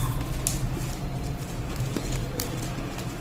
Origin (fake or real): real